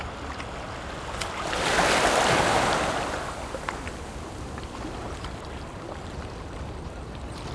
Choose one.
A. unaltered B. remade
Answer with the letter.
A